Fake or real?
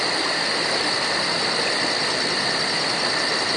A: real